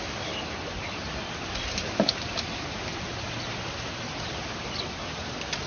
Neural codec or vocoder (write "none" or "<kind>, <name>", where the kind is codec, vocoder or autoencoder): none